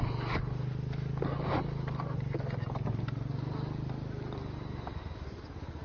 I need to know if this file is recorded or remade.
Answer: recorded